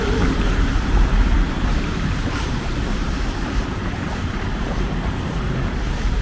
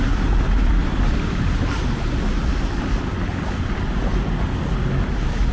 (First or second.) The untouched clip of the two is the second